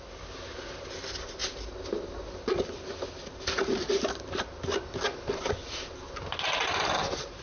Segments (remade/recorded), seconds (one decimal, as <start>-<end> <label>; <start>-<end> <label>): 0.0-7.4 recorded